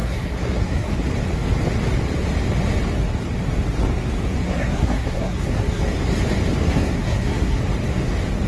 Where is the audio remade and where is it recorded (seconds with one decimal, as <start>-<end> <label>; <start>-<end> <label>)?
0.0-0.9 remade; 0.9-4.4 recorded; 4.4-5.8 remade; 5.8-6.6 recorded; 6.6-7.6 remade; 7.6-8.5 recorded